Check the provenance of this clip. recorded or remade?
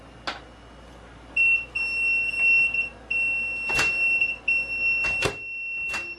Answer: recorded